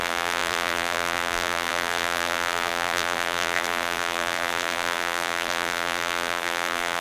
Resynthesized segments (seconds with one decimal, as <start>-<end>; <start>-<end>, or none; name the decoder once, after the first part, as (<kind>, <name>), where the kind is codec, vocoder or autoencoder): 0.0-7.0 (vocoder, BigVGAN v2)